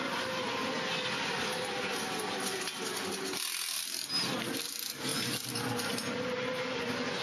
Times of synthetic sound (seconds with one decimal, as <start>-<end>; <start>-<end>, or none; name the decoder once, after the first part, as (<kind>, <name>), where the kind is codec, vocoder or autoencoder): none